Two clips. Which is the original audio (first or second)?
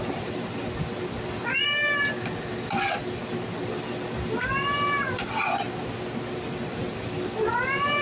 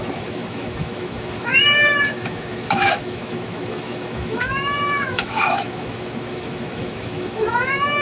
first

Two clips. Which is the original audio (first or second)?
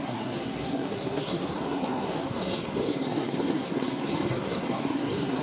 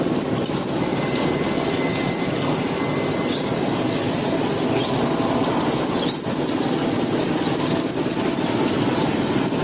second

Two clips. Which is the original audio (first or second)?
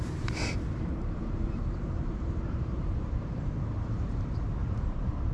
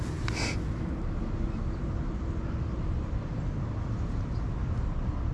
second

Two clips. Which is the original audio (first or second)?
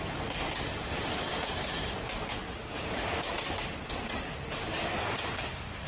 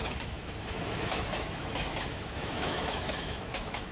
first